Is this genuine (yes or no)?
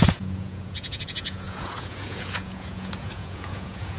no